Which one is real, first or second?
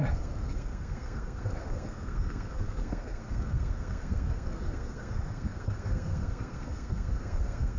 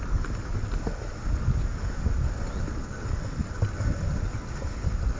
second